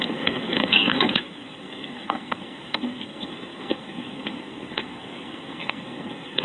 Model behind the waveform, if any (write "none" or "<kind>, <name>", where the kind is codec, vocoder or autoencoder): codec, SNAC